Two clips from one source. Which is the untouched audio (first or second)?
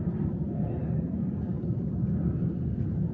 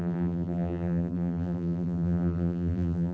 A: first